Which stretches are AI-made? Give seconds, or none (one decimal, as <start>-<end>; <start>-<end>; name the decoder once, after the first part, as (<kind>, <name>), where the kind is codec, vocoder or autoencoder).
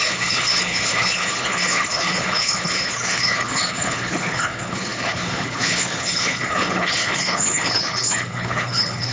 0.0-9.1 (codec, HILCodec)